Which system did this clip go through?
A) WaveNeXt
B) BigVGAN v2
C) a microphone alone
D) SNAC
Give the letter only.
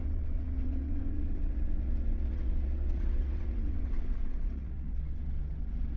A